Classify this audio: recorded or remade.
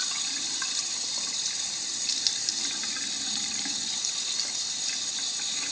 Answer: recorded